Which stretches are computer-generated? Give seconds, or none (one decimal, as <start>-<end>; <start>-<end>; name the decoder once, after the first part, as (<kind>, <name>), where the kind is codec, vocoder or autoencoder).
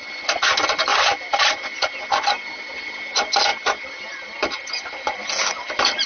none